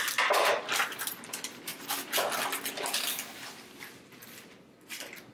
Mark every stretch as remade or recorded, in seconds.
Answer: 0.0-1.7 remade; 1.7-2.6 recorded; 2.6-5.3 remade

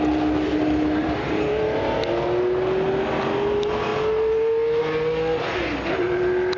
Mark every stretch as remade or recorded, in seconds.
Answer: 0.0-1.0 recorded; 1.0-2.1 remade; 2.1-6.6 recorded

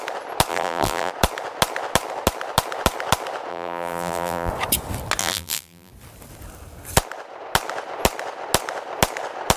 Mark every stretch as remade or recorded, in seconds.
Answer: 0.0-0.5 recorded; 0.5-1.1 remade; 1.1-3.5 recorded; 3.5-4.5 remade; 4.5-5.2 recorded; 5.2-5.9 remade; 5.9-9.6 recorded

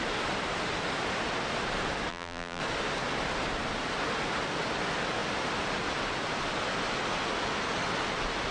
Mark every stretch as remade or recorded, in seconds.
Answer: 0.0-2.1 recorded; 2.1-2.6 remade; 2.6-8.5 recorded

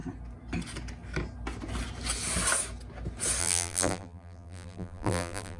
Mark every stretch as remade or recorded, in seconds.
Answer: 0.0-3.4 recorded; 3.4-5.6 remade

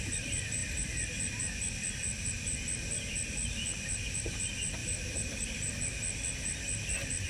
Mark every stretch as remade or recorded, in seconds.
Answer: 0.0-4.8 recorded; 4.8-5.8 remade; 5.8-7.3 recorded

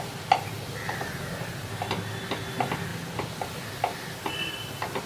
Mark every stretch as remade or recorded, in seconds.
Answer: 0.0-5.1 recorded

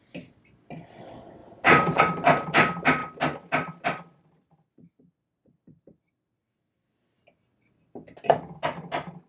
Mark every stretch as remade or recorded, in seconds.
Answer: 0.0-1.4 recorded; 1.4-2.0 remade; 2.0-3.0 recorded; 3.0-6.2 remade; 6.2-9.3 recorded